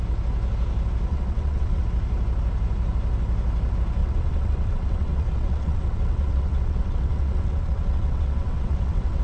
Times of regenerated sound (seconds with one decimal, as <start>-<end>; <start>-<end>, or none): 1.1-1.8; 4.0-9.2